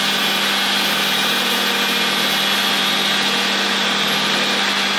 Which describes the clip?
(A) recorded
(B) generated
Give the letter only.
A